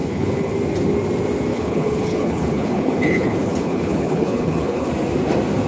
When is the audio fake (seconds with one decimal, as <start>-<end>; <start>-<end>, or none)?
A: 0.0-0.5; 1.5-4.9